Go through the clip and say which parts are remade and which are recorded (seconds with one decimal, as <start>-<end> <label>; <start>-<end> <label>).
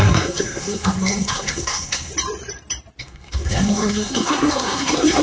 0.0-2.1 remade; 2.1-3.0 recorded; 3.0-5.2 remade